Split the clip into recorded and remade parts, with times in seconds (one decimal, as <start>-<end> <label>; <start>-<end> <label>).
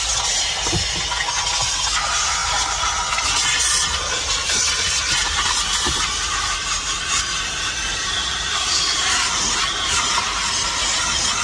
0.0-2.4 recorded; 2.4-2.9 remade; 2.9-4.4 recorded; 4.4-9.6 remade; 9.6-11.4 recorded